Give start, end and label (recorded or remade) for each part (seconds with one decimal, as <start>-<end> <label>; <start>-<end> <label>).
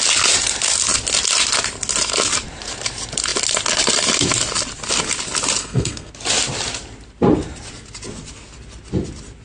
0.0-5.6 recorded; 5.6-6.1 remade; 6.1-9.4 recorded